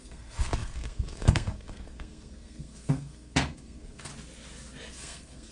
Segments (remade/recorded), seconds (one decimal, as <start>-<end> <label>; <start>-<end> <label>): 0.0-4.1 remade; 4.1-4.9 recorded; 4.9-5.5 remade